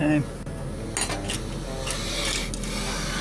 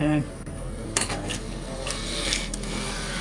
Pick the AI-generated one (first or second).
second